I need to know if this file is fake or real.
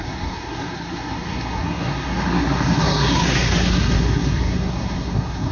fake